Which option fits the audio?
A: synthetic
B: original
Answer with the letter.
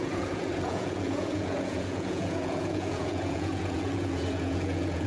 A